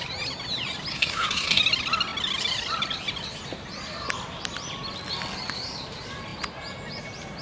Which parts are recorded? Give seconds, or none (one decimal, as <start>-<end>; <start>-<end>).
0.0-0.9; 1.6-7.4